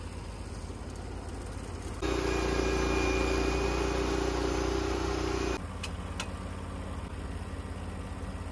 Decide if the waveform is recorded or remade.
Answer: recorded